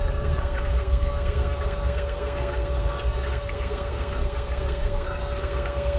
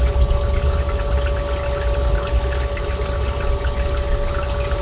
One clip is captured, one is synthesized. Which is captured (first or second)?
second